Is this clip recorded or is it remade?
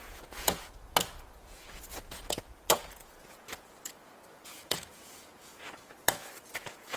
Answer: remade